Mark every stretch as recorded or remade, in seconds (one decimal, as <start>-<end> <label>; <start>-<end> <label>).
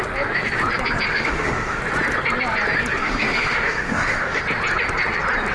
0.0-1.1 recorded; 1.1-1.8 remade; 1.8-3.0 recorded; 3.0-4.4 remade; 4.4-5.5 recorded